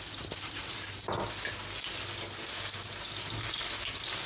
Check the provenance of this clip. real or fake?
real